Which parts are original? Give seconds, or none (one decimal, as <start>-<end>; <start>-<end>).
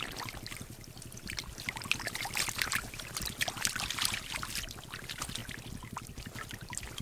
0.0-7.0